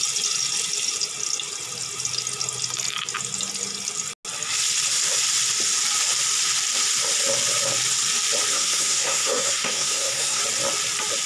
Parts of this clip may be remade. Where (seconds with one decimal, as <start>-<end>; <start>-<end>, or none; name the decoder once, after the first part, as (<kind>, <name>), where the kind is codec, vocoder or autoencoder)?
8.5-10.4 (codec, SNAC)

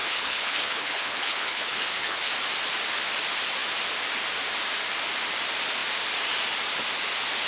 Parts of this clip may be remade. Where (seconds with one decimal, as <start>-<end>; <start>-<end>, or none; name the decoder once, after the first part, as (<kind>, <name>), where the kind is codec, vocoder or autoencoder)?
0.0-2.3 (codec, HILCodec)

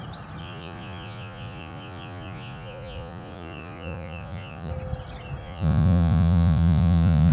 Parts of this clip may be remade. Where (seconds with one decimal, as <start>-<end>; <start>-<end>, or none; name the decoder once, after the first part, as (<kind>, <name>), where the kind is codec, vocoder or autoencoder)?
0.4-4.7 (vocoder, Vocos); 5.4-7.3

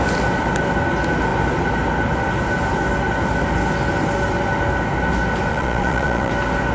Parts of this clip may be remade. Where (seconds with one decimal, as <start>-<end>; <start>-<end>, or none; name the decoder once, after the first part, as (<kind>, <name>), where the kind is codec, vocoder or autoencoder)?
5.5-6.3 (vocoder, Vocos)

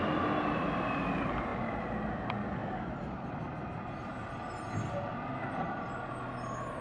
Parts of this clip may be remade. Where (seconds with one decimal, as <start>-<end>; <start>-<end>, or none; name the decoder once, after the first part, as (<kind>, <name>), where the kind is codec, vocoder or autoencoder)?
none